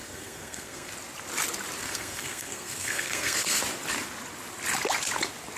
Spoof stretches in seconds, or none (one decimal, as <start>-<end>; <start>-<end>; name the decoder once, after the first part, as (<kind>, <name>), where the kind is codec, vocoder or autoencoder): 0.0-0.9 (codec, SNAC); 1.8-3.6